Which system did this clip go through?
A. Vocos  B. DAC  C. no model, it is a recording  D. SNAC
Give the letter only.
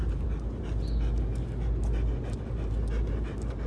C